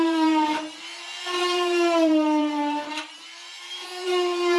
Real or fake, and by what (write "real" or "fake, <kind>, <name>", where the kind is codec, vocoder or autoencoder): fake, vocoder, BigVGAN v2